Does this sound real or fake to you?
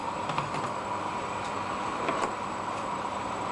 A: fake